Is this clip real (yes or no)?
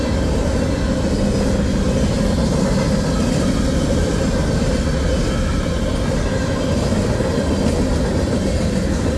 yes